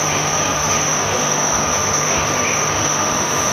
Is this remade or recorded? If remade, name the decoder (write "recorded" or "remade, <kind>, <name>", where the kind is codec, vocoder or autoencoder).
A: remade, autoencoder, DAC-VAE